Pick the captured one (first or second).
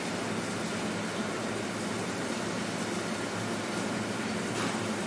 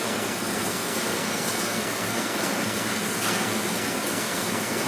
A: first